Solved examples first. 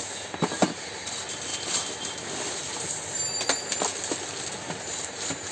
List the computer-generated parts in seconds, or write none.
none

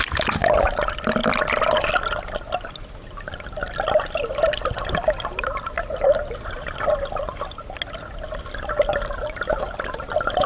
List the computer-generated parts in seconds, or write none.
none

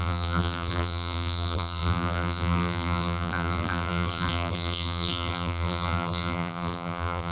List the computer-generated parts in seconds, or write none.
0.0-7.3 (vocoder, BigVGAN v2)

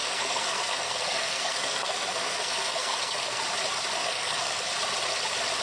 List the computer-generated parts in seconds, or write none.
0.0-3.4 (codec, SNAC); 4.0-4.6

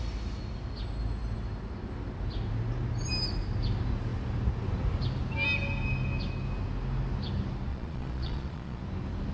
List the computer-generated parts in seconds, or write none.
7.7-8.8 (vocoder, Vocos)